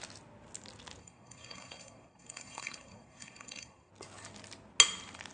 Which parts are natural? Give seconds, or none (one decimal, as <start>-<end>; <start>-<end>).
0.0-1.0; 3.9-5.3